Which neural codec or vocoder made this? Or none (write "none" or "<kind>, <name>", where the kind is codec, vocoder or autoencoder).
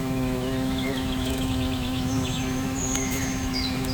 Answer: autoencoder, DAC-VAE